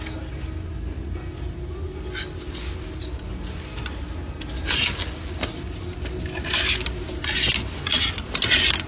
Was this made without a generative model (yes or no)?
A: yes